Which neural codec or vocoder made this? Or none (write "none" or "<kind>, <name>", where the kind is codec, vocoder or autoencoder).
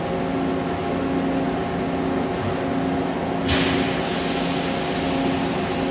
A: none